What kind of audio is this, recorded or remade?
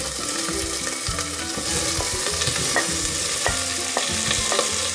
recorded